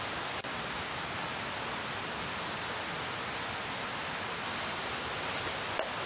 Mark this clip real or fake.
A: real